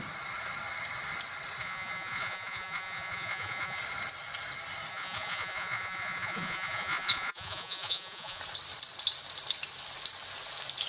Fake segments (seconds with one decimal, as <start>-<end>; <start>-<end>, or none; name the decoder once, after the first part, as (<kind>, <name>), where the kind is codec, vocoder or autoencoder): 1.6-3.8 (vocoder, Vocos); 4.9-8.4